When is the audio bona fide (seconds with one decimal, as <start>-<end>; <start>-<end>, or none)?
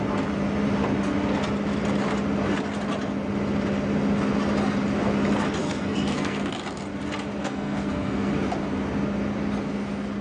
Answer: 0.0-5.6; 6.5-7.4; 8.3-10.2